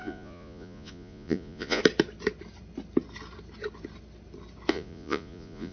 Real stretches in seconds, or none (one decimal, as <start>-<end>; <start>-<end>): 1.8-4.7

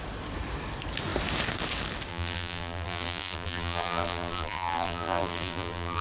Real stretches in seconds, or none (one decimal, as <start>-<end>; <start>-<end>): 0.0-2.1

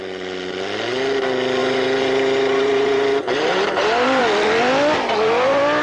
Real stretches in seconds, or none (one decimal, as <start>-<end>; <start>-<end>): 0.0-1.6; 4.2-5.8

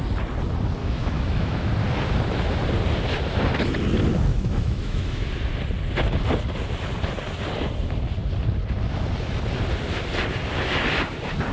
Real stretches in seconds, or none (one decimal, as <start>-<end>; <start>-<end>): 0.0-0.8; 1.7-4.3; 5.3-11.5